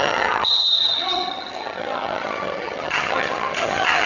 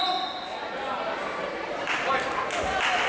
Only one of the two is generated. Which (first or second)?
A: first